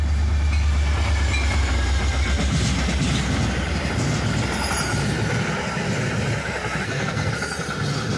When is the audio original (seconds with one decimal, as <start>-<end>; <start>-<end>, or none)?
0.0-6.4; 7.3-8.2